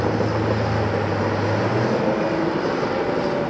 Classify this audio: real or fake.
real